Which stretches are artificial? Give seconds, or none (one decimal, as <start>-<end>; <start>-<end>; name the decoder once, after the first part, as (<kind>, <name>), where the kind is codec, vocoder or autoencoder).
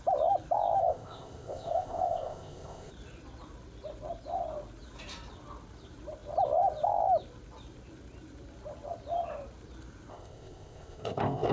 0.8-2.9 (codec, ZipCodec); 10.1-11.5